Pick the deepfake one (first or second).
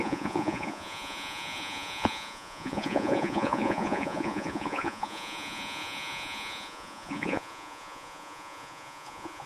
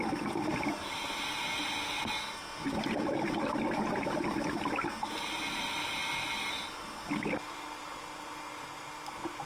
first